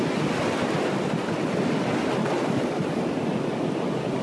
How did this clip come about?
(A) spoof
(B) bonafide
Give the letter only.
B